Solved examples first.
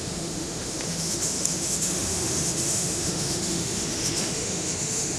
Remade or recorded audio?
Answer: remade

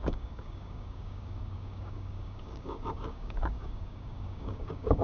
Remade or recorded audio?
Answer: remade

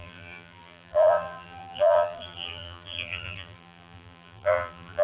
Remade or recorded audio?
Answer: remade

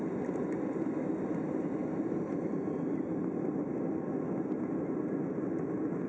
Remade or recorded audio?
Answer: recorded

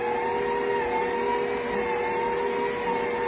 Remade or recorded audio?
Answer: recorded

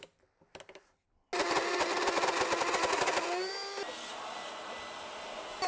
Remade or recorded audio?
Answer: recorded